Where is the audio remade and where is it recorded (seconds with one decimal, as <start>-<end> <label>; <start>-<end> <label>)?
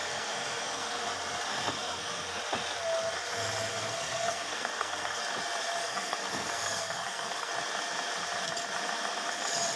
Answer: 0.0-1.0 remade; 1.0-1.5 recorded; 1.5-2.4 remade; 2.4-3.7 recorded; 3.7-5.2 remade; 5.2-5.8 recorded; 5.8-7.5 remade; 7.5-9.8 recorded